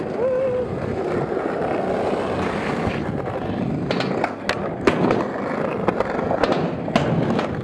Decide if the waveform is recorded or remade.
recorded